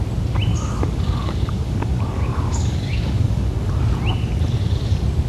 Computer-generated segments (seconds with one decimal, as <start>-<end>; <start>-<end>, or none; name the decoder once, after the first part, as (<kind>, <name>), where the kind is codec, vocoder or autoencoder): 0.5-3.7 (codec, DAC)